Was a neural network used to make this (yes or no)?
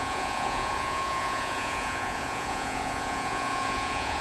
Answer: yes